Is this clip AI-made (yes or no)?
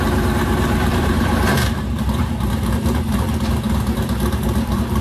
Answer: yes